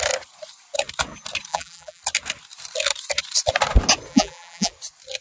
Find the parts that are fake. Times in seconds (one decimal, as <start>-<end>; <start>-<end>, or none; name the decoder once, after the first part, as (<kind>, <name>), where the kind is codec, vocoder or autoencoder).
1.5-2.0 (vocoder, BigVGAN v2); 4.1-4.7